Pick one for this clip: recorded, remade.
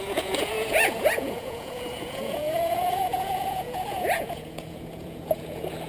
remade